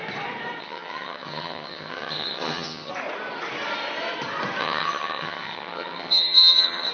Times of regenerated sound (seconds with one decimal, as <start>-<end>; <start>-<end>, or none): 0.6-2.9; 4.6-6.9